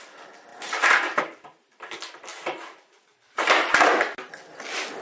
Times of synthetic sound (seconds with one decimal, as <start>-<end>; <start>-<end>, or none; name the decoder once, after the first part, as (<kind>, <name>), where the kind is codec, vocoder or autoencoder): none